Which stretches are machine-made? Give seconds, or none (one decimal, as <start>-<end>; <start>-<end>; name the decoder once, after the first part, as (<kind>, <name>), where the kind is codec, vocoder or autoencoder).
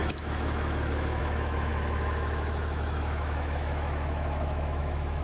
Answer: 0.0-5.2 (autoencoder, DAC-VAE)